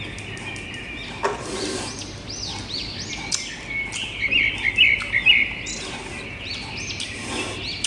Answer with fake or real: real